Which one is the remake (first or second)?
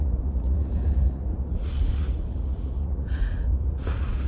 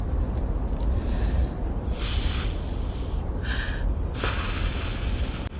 first